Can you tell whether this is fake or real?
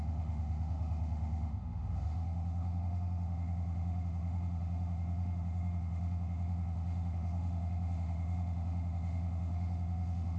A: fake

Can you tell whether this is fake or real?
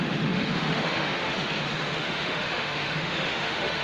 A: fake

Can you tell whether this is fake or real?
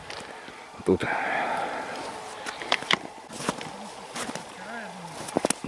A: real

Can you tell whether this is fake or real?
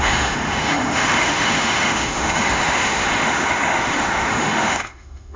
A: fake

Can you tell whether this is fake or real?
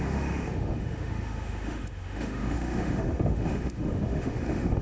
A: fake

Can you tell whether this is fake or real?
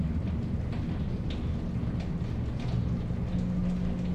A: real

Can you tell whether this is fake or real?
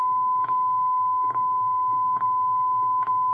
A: fake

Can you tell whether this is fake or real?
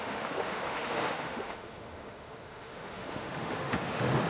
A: fake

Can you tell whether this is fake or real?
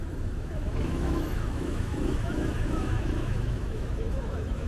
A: fake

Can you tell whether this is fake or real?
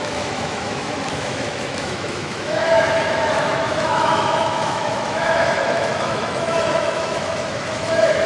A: fake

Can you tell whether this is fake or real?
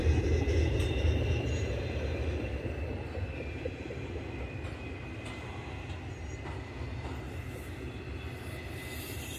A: real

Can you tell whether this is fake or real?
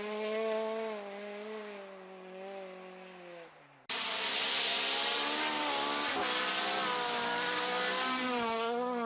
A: real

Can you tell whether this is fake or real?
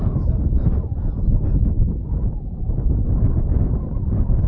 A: real